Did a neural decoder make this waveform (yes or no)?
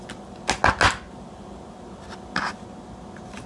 no